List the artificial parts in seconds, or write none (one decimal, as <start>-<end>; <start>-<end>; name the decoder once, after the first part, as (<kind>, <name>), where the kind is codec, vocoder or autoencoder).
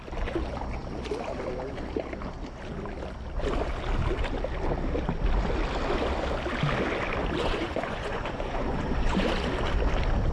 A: 7.4-9.3 (vocoder, Vocos)